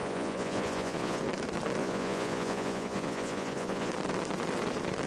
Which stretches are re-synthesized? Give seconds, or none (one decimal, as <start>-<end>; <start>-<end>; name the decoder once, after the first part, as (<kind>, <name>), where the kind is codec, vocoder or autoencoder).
0.0-1.2 (vocoder, Vocos); 1.8-3.9

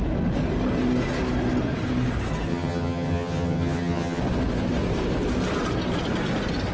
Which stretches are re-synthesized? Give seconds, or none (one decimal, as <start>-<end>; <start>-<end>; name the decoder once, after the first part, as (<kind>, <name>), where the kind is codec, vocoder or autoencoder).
2.5-4.2 (vocoder, HiFi-GAN)

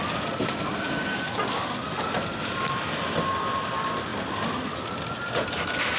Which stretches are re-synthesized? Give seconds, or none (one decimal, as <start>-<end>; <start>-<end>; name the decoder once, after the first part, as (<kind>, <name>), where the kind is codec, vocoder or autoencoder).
none

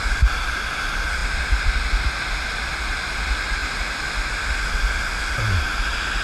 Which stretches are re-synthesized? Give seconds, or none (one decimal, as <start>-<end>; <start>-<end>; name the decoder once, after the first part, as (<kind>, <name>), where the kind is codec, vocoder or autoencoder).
none